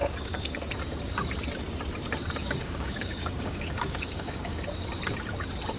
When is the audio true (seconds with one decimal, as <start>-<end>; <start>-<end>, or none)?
0.7-2.4; 4.6-5.8